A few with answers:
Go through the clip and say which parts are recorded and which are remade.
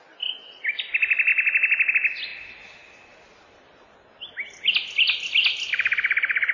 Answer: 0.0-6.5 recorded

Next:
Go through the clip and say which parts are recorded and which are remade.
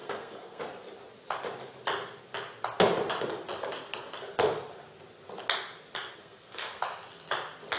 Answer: 0.0-0.6 remade; 0.6-6.2 recorded; 6.2-6.8 remade; 6.8-7.8 recorded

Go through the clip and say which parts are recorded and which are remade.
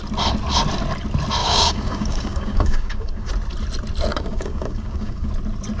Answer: 0.0-1.4 recorded; 1.4-3.3 remade; 3.3-4.1 recorded; 4.1-5.3 remade; 5.3-5.8 recorded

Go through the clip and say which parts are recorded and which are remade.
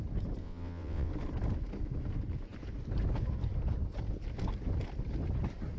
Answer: 0.0-0.4 recorded; 0.4-1.1 remade; 1.1-5.8 recorded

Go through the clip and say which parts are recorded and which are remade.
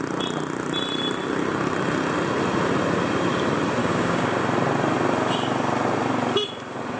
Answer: 0.0-3.8 recorded; 3.8-4.4 remade; 4.4-7.0 recorded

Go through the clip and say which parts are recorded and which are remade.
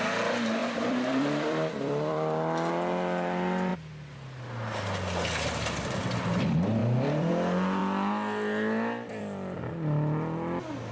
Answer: 0.0-0.6 recorded; 0.6-2.7 remade; 2.7-6.8 recorded; 6.8-7.3 remade; 7.3-10.9 recorded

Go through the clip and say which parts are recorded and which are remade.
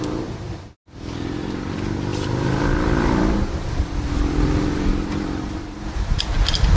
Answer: 0.0-2.1 recorded; 2.1-6.2 remade; 6.2-6.8 recorded